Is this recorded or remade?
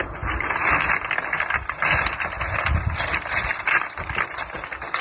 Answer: recorded